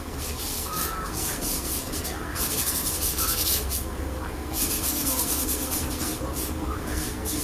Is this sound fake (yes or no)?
yes